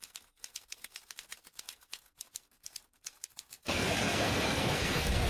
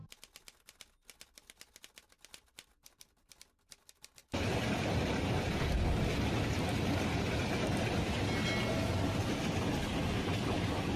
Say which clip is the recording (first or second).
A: second